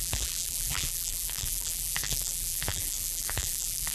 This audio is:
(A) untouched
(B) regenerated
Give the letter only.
B